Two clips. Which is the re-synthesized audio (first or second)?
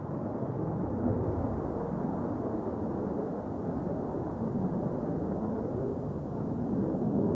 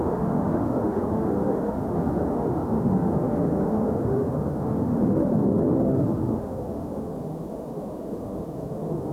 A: second